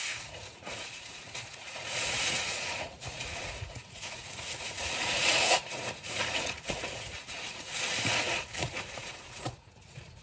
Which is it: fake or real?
fake